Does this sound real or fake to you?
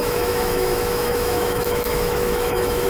fake